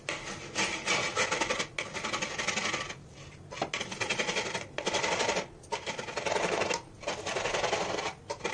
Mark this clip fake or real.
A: real